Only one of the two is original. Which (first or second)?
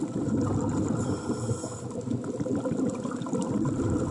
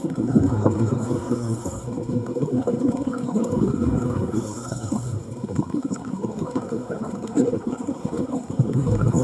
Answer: first